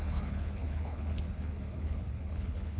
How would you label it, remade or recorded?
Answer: remade